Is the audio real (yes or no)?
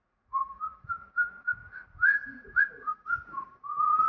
no